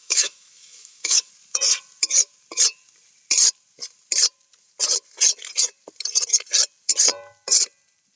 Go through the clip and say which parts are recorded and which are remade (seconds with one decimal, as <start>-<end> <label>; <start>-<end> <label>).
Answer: 0.0-1.3 remade; 1.3-8.2 recorded